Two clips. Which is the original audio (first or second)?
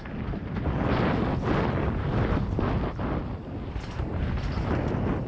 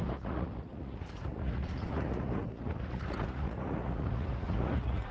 first